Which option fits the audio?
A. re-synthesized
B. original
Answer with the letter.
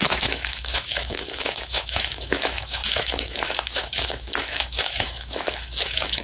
A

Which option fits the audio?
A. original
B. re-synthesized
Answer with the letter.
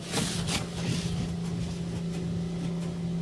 A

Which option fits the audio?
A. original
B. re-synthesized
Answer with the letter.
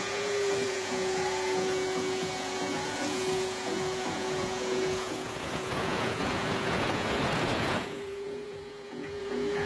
B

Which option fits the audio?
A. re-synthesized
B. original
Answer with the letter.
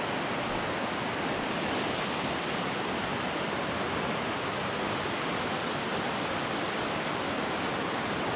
B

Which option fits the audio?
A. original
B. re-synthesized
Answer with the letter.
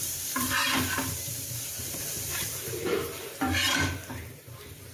B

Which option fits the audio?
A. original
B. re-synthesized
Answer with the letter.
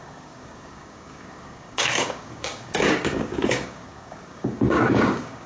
B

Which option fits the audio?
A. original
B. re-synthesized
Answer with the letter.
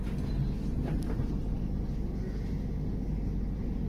A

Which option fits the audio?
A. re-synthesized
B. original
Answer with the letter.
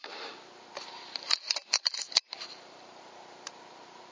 A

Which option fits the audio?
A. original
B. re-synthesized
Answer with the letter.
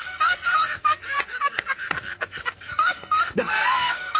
B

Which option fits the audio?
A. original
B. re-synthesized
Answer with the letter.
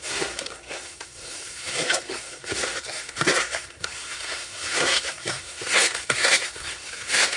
B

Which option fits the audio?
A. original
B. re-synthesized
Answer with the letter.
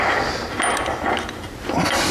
A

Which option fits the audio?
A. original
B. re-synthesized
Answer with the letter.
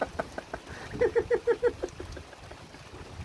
A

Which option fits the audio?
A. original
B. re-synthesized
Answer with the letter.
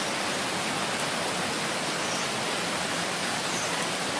A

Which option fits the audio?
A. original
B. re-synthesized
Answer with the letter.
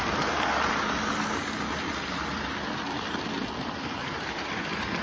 A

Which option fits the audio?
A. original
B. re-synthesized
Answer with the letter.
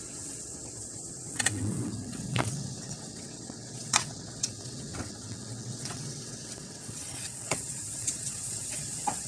B